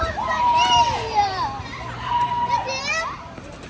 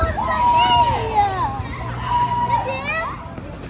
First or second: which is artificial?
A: first